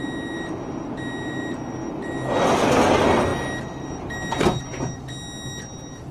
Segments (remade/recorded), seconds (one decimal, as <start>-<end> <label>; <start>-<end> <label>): 0.0-6.1 recorded